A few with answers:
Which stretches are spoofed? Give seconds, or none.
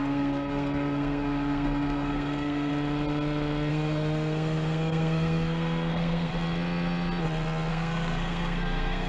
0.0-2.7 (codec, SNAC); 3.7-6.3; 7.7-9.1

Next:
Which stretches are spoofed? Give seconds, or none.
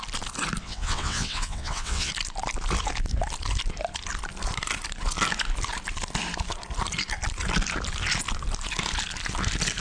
0.6-2.1 (vocoder, WaveNeXt)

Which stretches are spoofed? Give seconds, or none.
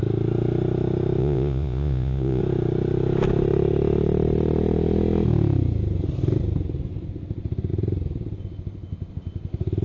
1.2-2.4 (vocoder, Vocos)